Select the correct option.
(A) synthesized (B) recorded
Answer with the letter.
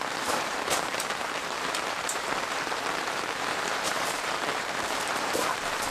A